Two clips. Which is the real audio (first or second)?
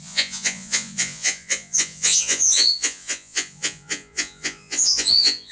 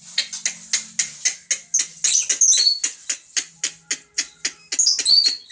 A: second